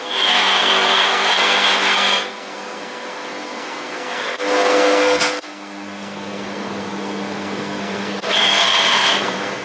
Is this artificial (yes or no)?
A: yes